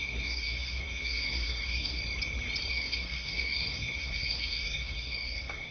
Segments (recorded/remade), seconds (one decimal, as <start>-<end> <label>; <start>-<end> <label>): 0.0-2.0 remade; 2.0-2.7 recorded; 2.7-5.7 remade